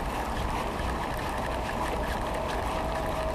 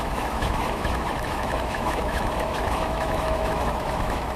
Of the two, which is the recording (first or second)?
first